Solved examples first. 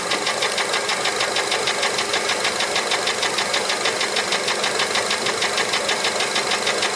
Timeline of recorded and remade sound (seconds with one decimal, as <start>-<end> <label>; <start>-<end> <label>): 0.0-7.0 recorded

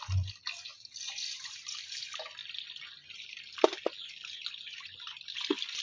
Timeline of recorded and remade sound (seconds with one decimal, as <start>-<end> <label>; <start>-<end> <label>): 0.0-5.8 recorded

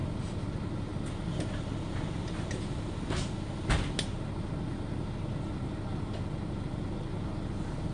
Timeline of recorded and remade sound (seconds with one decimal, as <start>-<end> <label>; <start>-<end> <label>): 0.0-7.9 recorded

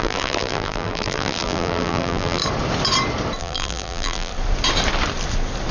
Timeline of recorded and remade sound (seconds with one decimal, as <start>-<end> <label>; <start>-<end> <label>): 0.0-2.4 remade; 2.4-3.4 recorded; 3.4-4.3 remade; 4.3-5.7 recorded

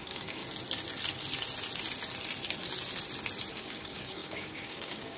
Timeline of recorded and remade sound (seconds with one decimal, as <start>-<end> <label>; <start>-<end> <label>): 0.0-0.4 remade; 0.4-3.5 recorded; 3.5-5.2 remade